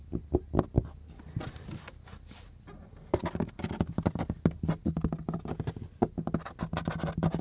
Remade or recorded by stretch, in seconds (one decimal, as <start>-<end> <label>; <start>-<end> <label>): 0.0-7.4 recorded